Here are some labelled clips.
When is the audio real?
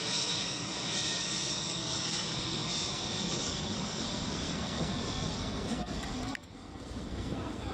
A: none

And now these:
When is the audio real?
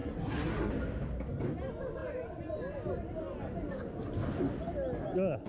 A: 0.7-5.5